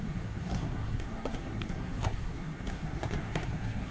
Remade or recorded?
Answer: remade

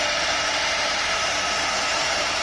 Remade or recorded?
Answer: recorded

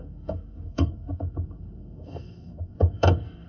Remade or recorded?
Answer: remade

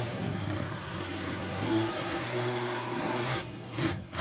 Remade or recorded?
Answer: remade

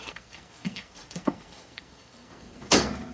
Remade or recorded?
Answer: remade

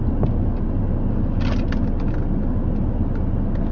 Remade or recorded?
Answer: recorded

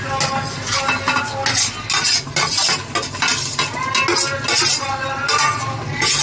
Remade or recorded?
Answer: recorded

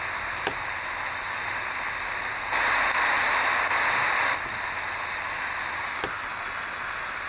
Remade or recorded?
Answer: recorded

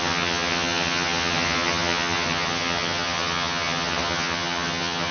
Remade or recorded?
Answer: remade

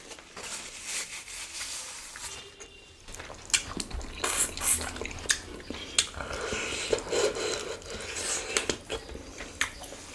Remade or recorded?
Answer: recorded